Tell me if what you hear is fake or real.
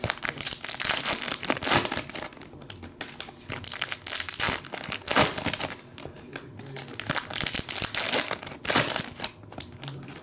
real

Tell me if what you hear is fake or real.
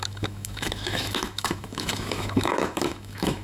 fake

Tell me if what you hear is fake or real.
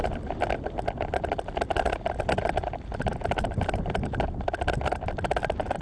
real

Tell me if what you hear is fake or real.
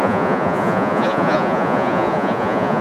fake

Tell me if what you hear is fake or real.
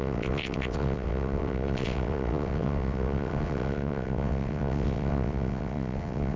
fake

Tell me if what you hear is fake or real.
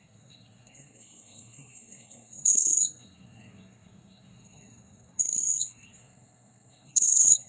fake